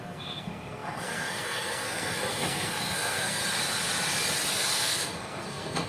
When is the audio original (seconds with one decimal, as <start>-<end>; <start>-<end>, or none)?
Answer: 3.4-4.5